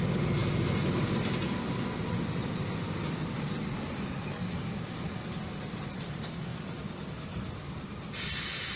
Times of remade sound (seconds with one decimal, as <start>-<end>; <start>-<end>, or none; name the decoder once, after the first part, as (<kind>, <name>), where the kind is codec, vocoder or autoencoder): 0.4-5.2 (vocoder, BigVGAN v2); 6.5-7.9